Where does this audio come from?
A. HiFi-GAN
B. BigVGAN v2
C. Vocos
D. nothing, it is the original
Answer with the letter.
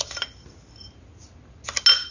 D